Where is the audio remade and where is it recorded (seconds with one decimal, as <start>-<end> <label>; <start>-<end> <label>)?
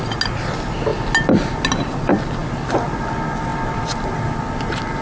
0.0-5.0 recorded